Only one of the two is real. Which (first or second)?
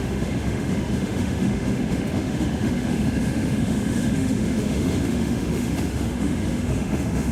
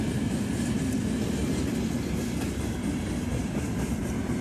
second